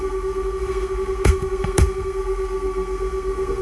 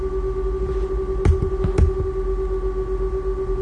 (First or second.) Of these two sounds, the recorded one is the second